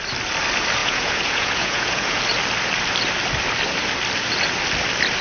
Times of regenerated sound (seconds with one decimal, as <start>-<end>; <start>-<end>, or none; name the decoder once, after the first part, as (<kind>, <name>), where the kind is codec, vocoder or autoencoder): 0.8-2.2 (vocoder, Vocos)